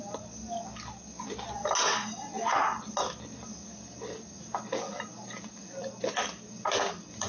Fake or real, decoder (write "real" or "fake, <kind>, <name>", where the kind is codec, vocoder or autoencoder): real